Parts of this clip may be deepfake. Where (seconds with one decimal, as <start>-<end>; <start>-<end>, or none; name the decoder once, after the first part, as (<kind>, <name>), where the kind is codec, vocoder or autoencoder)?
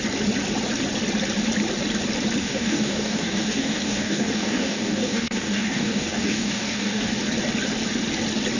2.4-7.1 (codec, DAC)